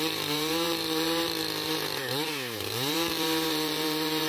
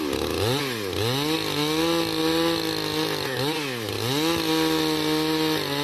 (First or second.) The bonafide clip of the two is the second